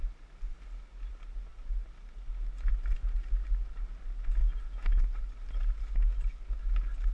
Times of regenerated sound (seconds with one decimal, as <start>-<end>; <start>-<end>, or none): none